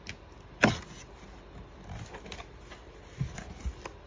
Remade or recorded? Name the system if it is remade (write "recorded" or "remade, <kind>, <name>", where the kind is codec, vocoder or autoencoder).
recorded